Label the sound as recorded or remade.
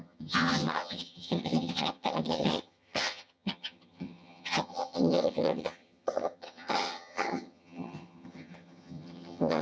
remade